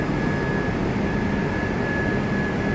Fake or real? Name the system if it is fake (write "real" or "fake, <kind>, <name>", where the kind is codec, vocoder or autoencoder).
real